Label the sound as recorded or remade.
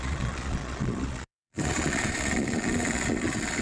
remade